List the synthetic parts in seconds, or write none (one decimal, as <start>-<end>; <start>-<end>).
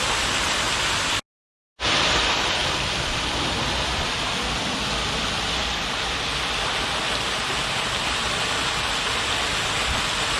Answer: none